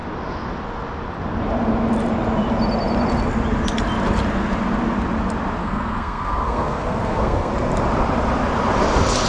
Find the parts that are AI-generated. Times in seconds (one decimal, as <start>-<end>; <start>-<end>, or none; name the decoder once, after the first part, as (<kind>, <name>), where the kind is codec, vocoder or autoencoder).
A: 5.6-7.5 (codec, SNAC)